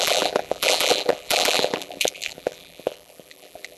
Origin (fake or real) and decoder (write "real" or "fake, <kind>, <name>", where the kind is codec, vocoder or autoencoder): fake, vocoder, BigVGAN v2